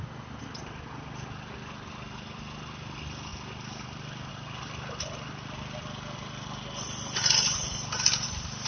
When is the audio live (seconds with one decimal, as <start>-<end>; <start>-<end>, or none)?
0.0-8.7